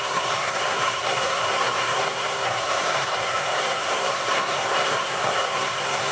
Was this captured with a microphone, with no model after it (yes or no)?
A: no